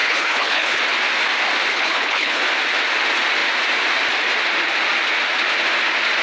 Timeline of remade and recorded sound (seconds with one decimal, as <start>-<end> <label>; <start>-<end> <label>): 0.0-0.8 remade; 0.8-1.7 recorded; 1.7-2.4 remade; 2.4-6.2 recorded